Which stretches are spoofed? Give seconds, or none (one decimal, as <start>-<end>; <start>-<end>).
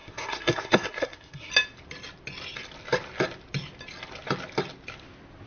0.0-1.5